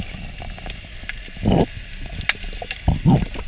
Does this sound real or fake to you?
real